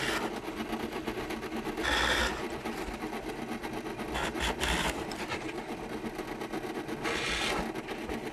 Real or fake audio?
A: real